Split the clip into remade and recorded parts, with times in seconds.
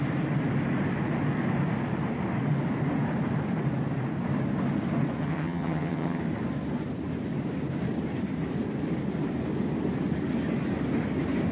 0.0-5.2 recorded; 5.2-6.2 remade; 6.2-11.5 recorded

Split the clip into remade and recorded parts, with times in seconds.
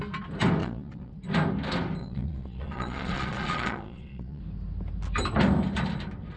0.0-0.6 recorded; 0.6-1.1 remade; 1.1-2.0 recorded; 2.0-4.4 remade; 4.4-6.4 recorded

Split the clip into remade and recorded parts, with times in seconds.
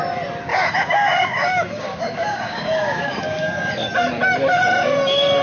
0.0-0.5 recorded; 0.5-3.7 remade; 3.7-5.4 recorded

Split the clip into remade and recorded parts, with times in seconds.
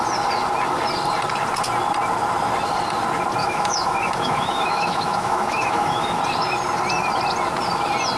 0.0-3.4 recorded; 3.4-6.2 remade; 6.2-8.2 recorded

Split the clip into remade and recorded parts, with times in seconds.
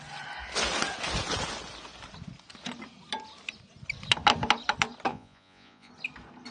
0.0-5.1 recorded; 5.1-5.9 remade; 5.9-6.5 recorded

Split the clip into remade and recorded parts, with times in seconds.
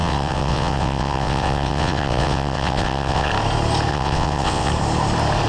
0.0-3.3 remade; 3.3-3.9 recorded; 3.9-4.7 remade; 4.7-5.5 recorded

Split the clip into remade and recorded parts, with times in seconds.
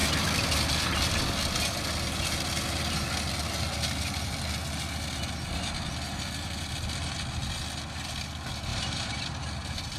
0.0-8.7 recorded; 8.7-9.2 remade; 9.2-10.0 recorded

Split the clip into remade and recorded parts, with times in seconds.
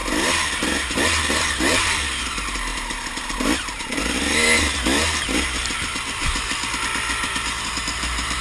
0.0-8.4 remade